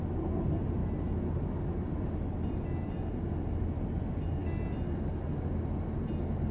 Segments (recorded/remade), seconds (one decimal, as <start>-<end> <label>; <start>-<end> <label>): 0.0-6.5 recorded